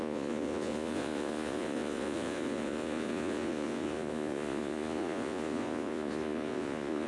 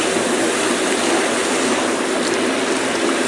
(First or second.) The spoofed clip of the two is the first